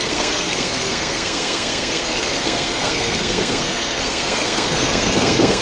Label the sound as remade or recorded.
remade